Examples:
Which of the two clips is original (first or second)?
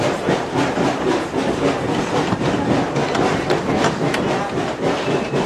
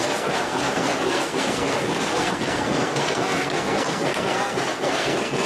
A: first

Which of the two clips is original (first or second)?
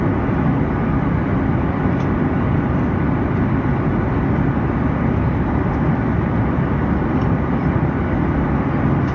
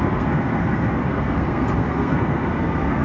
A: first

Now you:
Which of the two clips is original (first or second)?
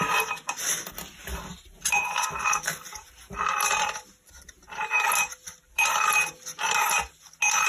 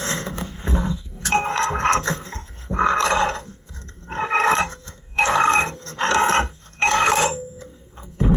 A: first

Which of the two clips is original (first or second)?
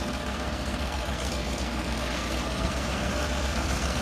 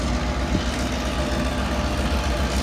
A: second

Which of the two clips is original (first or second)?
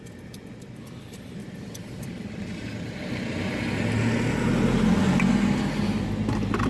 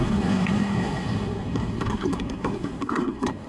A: first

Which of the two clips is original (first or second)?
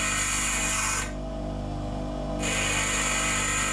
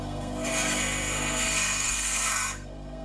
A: first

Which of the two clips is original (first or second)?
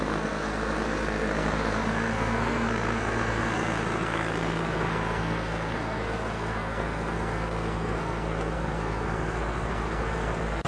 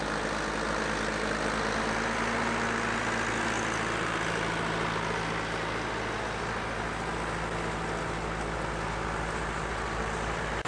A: second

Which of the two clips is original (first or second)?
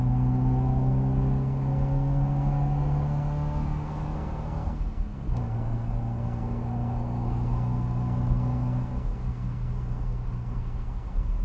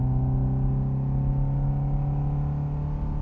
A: second